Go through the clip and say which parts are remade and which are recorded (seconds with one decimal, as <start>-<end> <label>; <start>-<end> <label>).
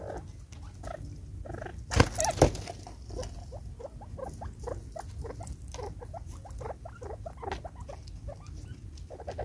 0.0-9.4 recorded